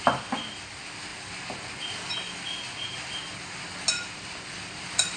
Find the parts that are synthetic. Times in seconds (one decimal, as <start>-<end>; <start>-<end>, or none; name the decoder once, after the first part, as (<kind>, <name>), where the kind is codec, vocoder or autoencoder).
none